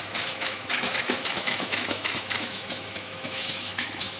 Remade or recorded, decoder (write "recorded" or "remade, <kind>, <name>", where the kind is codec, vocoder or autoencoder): remade, autoencoder, DAC-VAE